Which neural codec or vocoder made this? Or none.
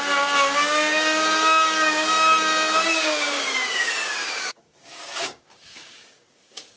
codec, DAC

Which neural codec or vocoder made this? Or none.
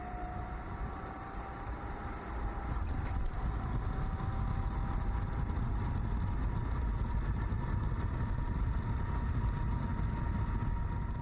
none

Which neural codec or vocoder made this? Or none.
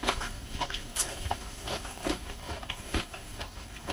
codec, DAC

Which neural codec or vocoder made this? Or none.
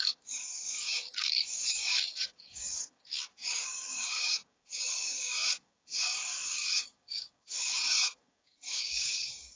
codec, DAC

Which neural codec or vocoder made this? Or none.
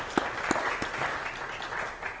none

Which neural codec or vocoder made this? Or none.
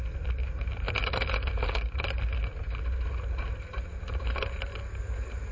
none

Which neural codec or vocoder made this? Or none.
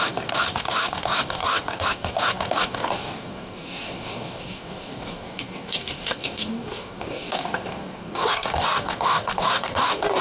codec, DAC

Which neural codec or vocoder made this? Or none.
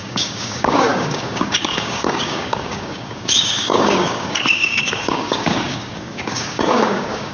codec, DAC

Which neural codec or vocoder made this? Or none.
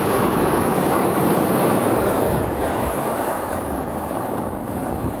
codec, DAC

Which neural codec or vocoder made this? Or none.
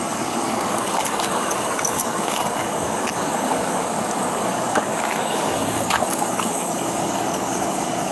codec, DAC